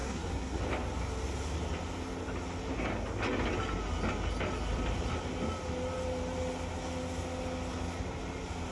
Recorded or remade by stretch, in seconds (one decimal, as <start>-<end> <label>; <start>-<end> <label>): 0.0-0.6 remade; 0.6-8.7 recorded

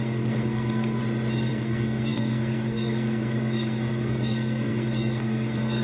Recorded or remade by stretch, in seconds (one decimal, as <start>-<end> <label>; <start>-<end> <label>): 0.0-1.0 remade; 1.0-1.5 recorded; 1.5-5.8 remade

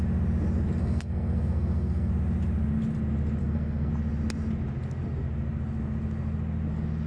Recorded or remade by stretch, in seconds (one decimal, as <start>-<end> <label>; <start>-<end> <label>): 0.0-0.8 recorded; 0.8-2.1 remade; 2.1-3.4 recorded; 3.4-3.9 remade; 3.9-7.1 recorded

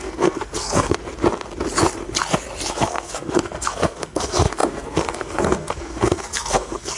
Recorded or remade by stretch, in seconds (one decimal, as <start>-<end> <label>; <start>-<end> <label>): 0.0-1.0 remade; 1.0-2.7 recorded; 2.7-7.0 remade

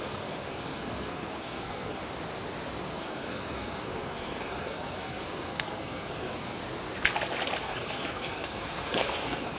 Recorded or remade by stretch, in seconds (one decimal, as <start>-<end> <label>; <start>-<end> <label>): 0.0-2.0 remade; 2.0-2.8 recorded; 2.8-6.6 remade; 6.6-7.6 recorded; 7.6-9.6 remade

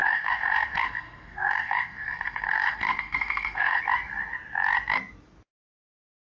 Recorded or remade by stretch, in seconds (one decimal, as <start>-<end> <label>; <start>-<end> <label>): 0.0-3.8 remade; 3.8-6.3 recorded

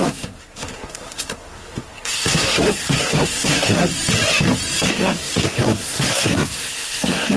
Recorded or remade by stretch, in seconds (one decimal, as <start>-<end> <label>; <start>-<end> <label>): 0.0-3.9 remade; 3.9-4.9 recorded; 4.9-7.4 remade